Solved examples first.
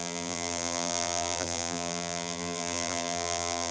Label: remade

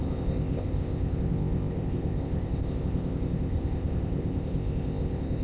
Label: remade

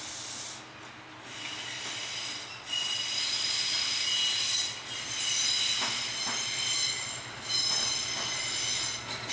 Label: recorded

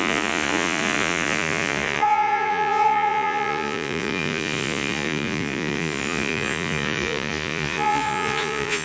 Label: remade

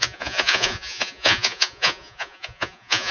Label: remade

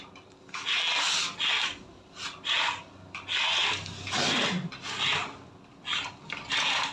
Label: recorded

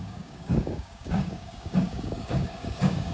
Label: remade